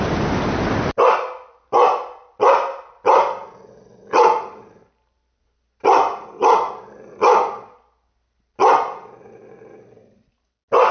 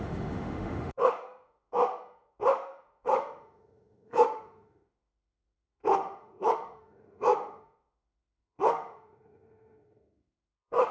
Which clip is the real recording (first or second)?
first